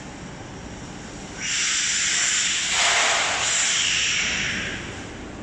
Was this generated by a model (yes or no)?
no